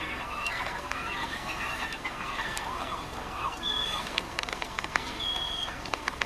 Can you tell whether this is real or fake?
fake